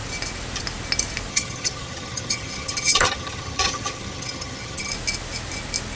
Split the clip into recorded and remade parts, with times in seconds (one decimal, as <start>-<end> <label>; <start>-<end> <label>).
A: 0.0-1.3 recorded; 1.3-4.9 remade; 4.9-6.0 recorded